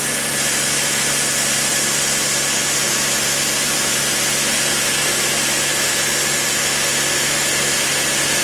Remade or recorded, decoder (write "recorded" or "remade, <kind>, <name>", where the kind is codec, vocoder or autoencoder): recorded